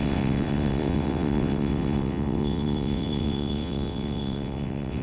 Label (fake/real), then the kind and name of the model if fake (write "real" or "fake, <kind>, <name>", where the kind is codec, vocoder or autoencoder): fake, vocoder, WaveNeXt